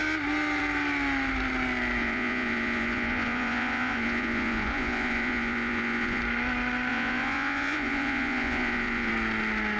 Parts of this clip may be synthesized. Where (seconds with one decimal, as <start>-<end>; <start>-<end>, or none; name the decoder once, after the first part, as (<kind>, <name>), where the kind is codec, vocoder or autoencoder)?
2.0-6.2 (vocoder, Vocos); 6.9-9.1